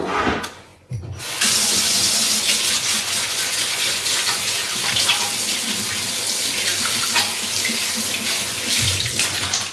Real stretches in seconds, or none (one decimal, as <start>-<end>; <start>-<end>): 4.6-8.4